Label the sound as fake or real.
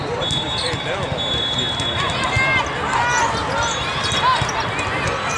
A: real